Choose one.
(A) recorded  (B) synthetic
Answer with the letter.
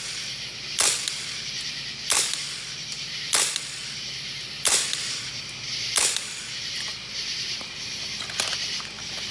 A